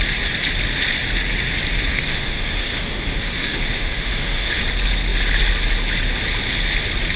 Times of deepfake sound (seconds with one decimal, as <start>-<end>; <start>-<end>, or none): 1.9-4.6